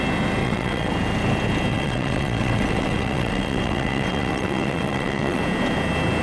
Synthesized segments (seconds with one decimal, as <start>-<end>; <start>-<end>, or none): 0.4-0.9; 1.7-5.4